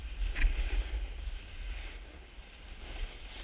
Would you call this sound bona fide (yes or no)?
yes